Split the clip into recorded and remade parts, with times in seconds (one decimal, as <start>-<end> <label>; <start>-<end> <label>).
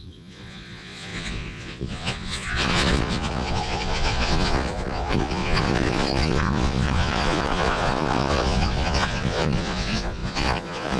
0.0-11.0 remade